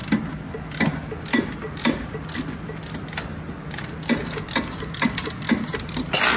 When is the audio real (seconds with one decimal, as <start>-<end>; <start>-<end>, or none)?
0.0-6.4